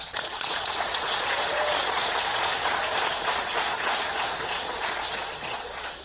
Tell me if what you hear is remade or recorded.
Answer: remade